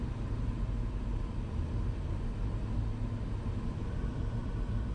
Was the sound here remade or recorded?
recorded